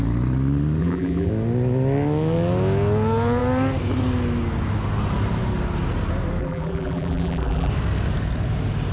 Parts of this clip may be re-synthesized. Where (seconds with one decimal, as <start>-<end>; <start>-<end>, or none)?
0.8-1.3; 6.4-7.7